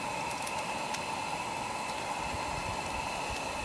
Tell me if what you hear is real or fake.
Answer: real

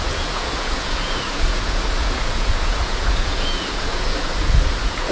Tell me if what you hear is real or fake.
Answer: fake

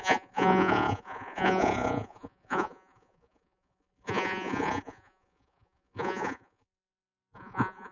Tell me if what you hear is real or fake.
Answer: fake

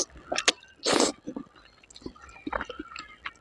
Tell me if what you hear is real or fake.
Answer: real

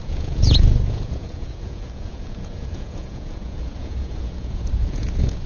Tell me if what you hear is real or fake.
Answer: fake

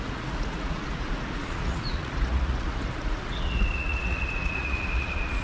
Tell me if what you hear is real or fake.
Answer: fake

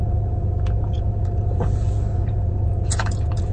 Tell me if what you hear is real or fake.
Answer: fake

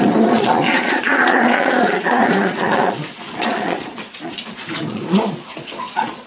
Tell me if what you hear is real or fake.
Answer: fake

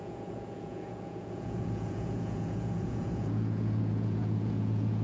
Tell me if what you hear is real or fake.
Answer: fake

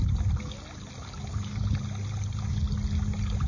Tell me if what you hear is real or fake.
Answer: real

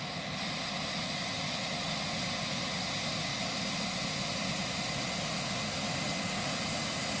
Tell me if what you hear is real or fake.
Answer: real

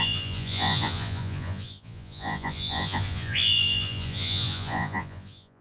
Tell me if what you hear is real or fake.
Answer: fake